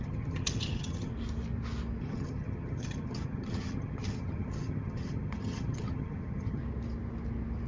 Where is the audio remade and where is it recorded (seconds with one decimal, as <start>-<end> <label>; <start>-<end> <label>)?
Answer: 0.0-1.1 remade; 1.1-2.0 recorded; 2.0-6.6 remade; 6.6-7.7 recorded